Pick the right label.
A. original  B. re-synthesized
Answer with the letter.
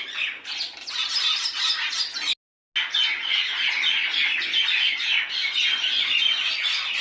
A